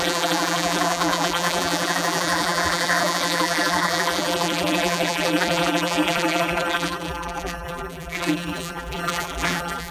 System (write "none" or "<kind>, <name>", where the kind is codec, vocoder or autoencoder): vocoder, BigVGAN v2